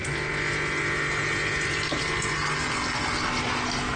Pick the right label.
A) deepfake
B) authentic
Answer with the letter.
B